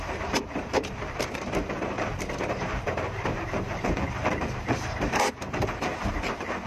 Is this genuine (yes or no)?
no